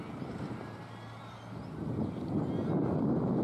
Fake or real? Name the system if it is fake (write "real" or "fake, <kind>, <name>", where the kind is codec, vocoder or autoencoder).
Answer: real